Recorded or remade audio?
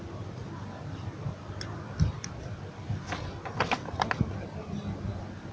recorded